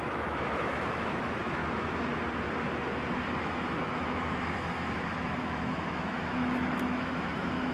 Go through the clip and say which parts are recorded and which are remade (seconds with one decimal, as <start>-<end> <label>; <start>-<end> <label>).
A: 0.0-1.6 remade; 1.6-3.4 recorded; 3.4-7.7 remade